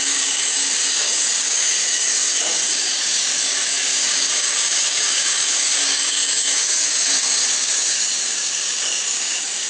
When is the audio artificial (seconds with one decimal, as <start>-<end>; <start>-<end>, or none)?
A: 0.0-9.7